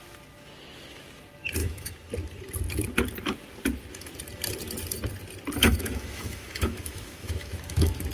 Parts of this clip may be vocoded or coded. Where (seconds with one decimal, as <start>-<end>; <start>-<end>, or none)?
1.6-2.1; 5.6-8.1